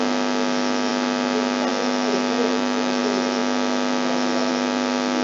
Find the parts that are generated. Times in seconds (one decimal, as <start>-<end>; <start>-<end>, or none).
2.5-3.0